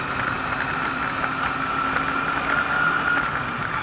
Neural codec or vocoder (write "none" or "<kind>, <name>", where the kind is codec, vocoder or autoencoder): none